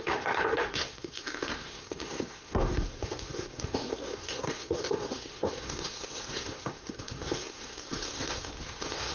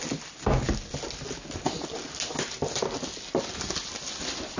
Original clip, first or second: second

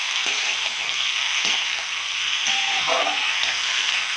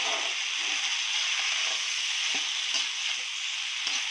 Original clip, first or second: second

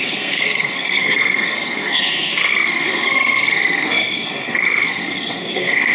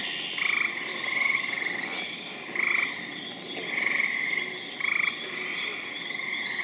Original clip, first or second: second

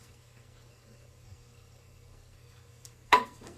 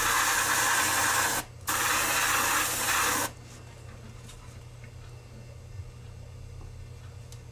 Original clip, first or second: second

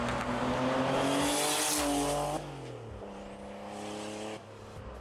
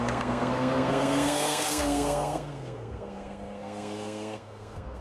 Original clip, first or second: first